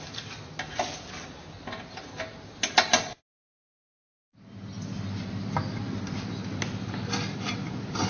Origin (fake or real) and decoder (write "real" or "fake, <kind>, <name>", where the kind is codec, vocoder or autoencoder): real